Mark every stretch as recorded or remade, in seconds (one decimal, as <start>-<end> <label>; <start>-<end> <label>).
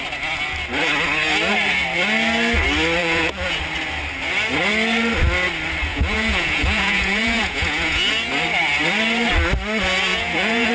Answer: 0.0-3.0 recorded; 3.0-3.6 remade; 3.6-5.9 recorded; 5.9-8.1 remade; 8.1-10.1 recorded; 10.1-10.7 remade